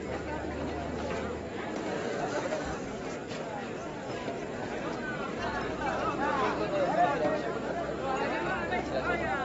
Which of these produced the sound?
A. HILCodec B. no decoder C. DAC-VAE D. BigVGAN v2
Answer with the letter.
B